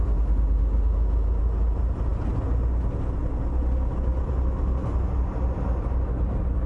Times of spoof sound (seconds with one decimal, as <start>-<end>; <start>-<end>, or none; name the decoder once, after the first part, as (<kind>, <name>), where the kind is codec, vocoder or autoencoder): none